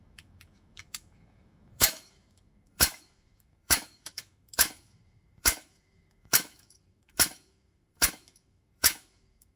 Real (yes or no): no